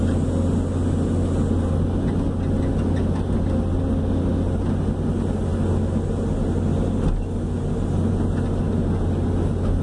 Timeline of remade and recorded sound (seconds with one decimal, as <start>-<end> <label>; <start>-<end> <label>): 0.0-9.8 recorded